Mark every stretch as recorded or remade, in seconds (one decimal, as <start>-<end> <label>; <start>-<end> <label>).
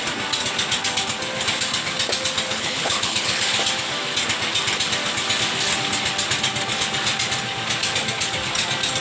0.0-2.5 recorded; 2.5-3.4 remade; 3.4-9.0 recorded